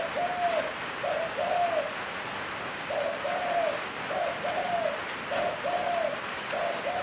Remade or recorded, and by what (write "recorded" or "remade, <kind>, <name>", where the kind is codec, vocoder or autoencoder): recorded